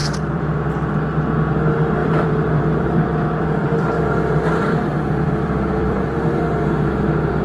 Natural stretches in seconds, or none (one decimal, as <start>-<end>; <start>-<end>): 0.6-2.0; 6.4-7.4